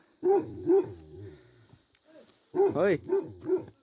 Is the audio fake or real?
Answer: fake